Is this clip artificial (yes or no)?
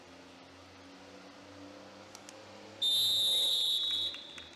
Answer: no